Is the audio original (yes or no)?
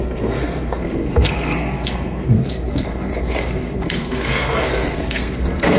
no